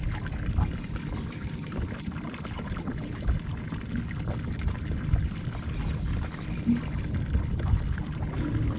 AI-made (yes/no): no